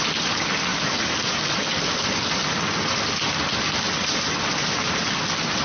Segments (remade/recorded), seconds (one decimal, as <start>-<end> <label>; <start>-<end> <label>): 0.0-5.6 recorded